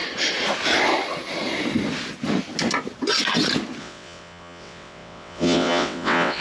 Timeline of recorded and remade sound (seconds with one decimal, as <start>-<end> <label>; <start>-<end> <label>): 0.0-3.8 recorded; 3.8-6.4 remade